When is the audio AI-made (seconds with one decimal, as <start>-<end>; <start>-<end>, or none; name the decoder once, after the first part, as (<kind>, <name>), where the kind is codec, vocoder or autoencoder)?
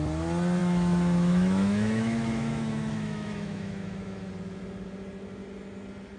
0.6-4.3 (autoencoder, DAC-VAE)